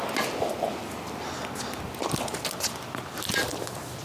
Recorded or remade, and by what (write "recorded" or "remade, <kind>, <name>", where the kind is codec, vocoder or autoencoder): recorded